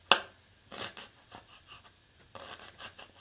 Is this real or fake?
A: real